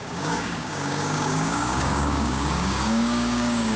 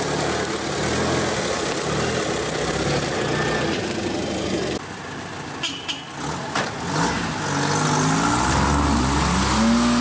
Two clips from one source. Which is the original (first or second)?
second